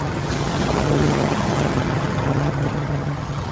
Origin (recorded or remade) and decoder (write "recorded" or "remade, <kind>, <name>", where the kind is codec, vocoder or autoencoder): remade, vocoder, HiFi-GAN